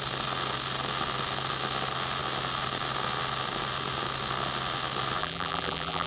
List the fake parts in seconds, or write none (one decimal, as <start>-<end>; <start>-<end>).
5.2-6.1

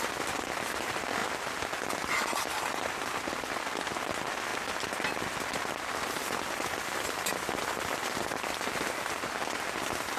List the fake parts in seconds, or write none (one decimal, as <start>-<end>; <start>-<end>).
none

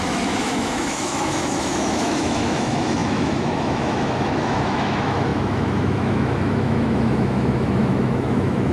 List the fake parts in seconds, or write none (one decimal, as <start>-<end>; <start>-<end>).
0.0-8.7

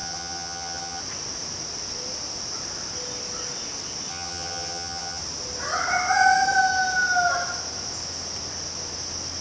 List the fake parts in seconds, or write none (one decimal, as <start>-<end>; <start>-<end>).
0.0-1.0; 4.1-5.2